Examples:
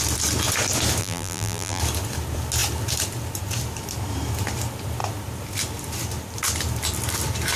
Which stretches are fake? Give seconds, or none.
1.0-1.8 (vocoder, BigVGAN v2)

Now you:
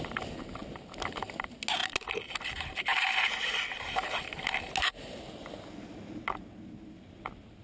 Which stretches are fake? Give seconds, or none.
none

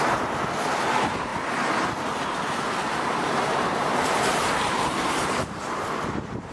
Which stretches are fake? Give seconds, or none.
2.9-6.5 (vocoder, BigVGAN v2)

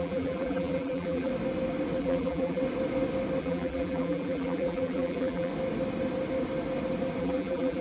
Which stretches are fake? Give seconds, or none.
0.0-1.3 (vocoder, BigVGAN v2); 2.0-2.6; 3.4-5.5; 7.2-7.8

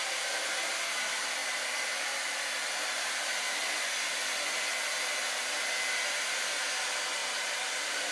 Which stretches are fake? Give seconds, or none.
7.2-8.1 (vocoder, BigVGAN v2)